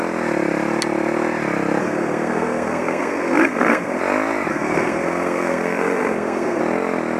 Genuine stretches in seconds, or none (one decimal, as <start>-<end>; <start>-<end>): 0.0-1.8; 4.0-4.5; 6.6-7.2